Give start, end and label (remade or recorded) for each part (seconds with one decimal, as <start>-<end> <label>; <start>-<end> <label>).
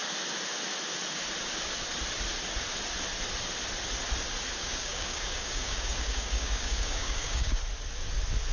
0.0-4.6 recorded; 4.6-7.6 remade; 7.6-8.5 recorded